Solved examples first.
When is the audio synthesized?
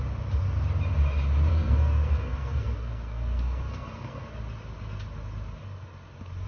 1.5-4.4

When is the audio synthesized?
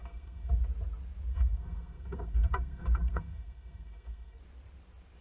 0.0-0.6; 1.3-4.4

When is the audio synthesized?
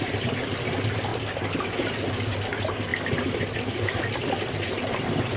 none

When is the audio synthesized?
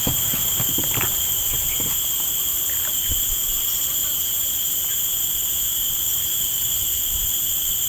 none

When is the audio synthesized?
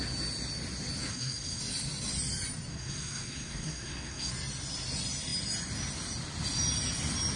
1.1-1.6; 2.7-4.3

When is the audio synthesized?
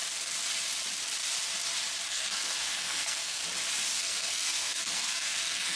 2.1-3.4; 4.0-5.8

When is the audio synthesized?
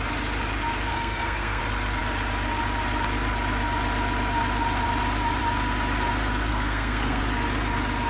0.9-1.6; 6.5-7.2